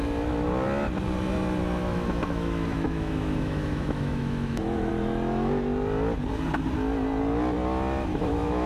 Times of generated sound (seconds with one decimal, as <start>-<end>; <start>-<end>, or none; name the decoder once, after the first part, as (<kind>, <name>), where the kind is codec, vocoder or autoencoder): 1.8-4.9 (autoencoder, DAC-VAE); 8.1-8.7